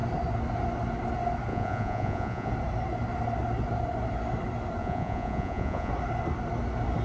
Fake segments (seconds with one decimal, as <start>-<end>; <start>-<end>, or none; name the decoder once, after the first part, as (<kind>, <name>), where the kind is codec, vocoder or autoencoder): 1.5-2.5 (vocoder, Vocos); 4.8-5.9